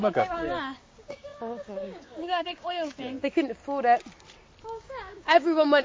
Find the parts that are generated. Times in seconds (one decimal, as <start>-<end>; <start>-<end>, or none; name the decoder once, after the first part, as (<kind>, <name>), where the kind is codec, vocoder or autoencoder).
0.0-3.6 (codec, DAC); 4.6-5.8